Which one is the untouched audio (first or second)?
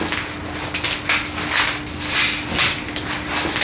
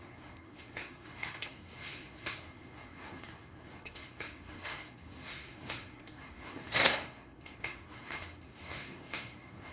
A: first